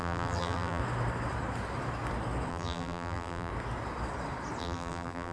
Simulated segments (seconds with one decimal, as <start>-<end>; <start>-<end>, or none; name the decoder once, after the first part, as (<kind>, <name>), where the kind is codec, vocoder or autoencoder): 0.0-0.8 (vocoder, BigVGAN v2); 2.5-3.5; 4.6-5.3